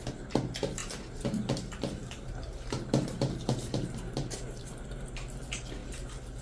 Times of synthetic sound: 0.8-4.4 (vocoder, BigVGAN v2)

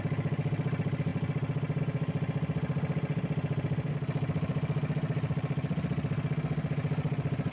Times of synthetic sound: none

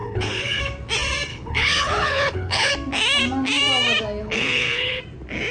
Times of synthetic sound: 0.0-0.6 (codec, HILCodec); 1.3-2.7; 4.2-5.0

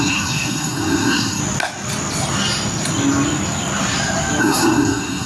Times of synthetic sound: 0.0-1.4 (codec, SNAC); 4.4-5.3

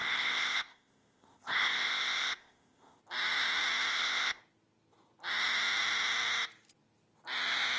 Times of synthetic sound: 0.0-3.0 (codec, ZipCodec); 3.9-4.4

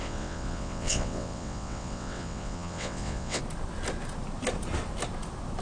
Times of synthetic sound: 0.0-3.4 (vocoder, WaveNeXt)

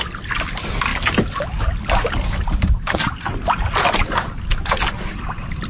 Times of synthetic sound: none

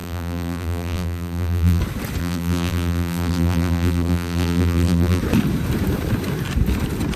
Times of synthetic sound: 0.0-1.8 (vocoder, BigVGAN v2); 2.2-5.2